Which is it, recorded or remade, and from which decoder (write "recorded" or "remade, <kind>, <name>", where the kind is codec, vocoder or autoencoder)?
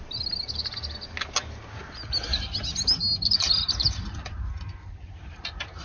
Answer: recorded